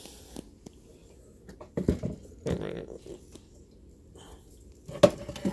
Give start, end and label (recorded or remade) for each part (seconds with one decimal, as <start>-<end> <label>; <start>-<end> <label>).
0.0-5.5 recorded